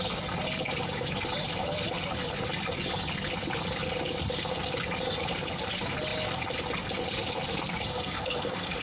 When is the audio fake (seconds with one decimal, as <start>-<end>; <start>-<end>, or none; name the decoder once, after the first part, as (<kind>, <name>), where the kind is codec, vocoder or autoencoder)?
7.9-8.8 (codec, SNAC)

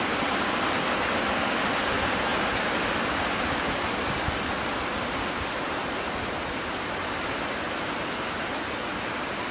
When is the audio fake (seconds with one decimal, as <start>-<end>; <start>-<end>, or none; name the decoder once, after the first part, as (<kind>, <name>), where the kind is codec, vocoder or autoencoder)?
none

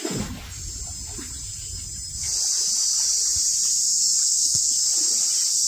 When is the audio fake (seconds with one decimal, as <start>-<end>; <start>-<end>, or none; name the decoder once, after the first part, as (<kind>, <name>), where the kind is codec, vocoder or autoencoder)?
4.2-4.7 (codec, SNAC)

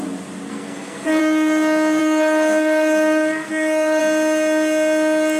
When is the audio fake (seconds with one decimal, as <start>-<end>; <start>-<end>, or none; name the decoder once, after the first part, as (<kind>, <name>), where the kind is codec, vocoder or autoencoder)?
0.5-1.2 (codec, SNAC); 2.0-4.0

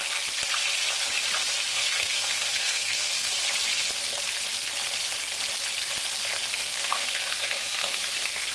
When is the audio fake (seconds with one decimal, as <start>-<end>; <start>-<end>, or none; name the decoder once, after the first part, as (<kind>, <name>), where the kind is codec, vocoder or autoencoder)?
1.7-3.3 (codec, SNAC); 6.5-8.5

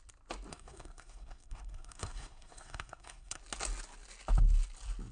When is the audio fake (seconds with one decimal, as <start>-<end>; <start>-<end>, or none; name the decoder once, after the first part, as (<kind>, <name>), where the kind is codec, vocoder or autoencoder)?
0.5-3.4 (codec, SNAC)